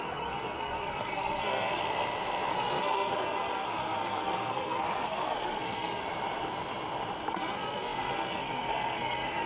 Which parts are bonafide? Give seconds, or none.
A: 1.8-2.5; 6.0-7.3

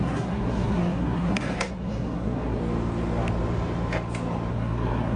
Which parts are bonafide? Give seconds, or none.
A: 2.6-4.5

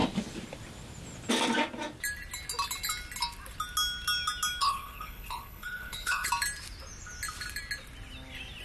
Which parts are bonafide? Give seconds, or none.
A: 0.0-4.6; 6.3-8.6

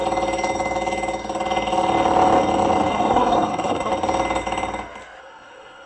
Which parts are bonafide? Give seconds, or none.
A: 0.0-2.9; 3.9-5.2

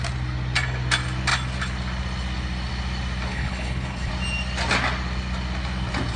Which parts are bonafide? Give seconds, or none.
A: 0.0-3.3; 4.1-6.2

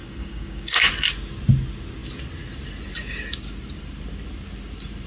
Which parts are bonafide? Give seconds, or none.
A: 0.9-5.1

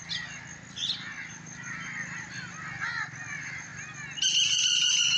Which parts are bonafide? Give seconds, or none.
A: 0.0-5.2